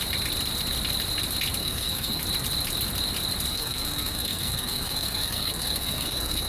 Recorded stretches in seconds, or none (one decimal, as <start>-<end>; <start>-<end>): 0.0-1.6; 2.2-3.5